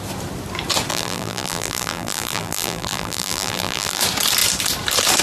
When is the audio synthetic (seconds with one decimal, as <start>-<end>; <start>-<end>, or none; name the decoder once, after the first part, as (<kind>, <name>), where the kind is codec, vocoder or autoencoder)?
0.9-4.0 (vocoder, BigVGAN v2)